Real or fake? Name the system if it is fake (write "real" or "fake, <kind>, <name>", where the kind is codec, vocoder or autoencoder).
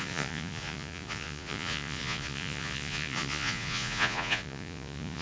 fake, vocoder, Vocos